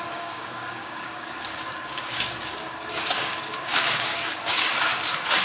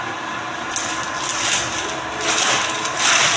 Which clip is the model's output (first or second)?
first